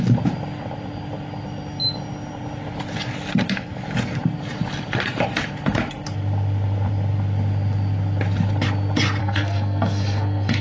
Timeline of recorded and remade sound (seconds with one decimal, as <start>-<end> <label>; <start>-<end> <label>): 0.0-9.2 recorded; 9.2-10.6 remade